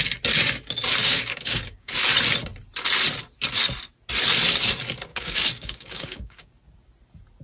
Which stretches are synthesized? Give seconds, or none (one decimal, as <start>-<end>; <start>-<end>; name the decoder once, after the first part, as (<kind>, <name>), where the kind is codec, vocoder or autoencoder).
1.0-1.9 (codec, DAC); 5.1-6.5